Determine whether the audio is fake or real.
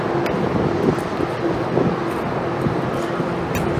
real